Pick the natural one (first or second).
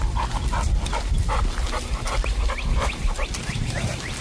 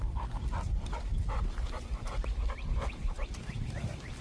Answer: first